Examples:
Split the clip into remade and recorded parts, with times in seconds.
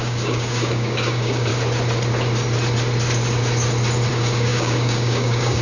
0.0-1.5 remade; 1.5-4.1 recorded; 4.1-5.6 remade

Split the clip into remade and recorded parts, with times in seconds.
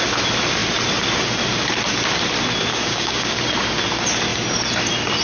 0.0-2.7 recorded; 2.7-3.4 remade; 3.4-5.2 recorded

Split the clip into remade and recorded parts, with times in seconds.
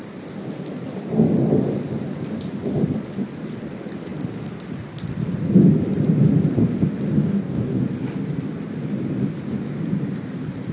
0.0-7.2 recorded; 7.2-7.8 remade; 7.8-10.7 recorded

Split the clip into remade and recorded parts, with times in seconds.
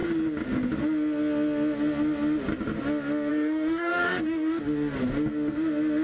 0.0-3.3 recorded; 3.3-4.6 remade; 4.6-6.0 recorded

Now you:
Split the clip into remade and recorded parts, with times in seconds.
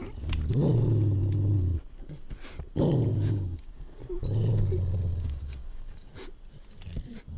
0.0-3.1 recorded; 3.1-4.0 remade; 4.0-5.1 recorded; 5.1-6.1 remade; 6.1-7.4 recorded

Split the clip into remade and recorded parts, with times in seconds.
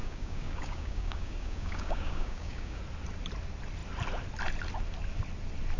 0.0-2.8 remade; 2.8-5.8 recorded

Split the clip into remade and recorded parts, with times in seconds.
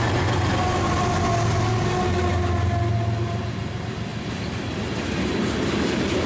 0.0-6.3 recorded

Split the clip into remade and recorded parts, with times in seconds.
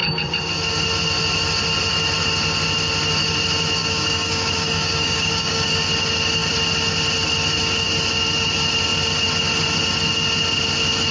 0.0-3.8 recorded; 3.8-5.7 remade; 5.7-11.1 recorded